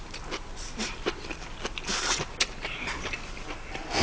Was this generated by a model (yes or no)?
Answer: no